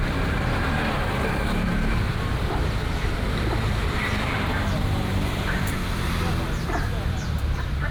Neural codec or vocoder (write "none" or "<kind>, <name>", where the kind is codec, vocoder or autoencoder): vocoder, BigVGAN v2